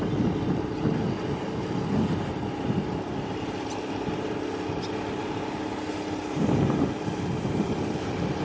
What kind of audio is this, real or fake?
real